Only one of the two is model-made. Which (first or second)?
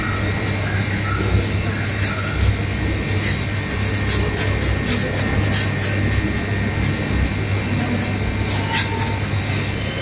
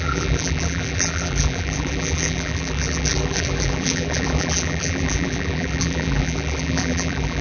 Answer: second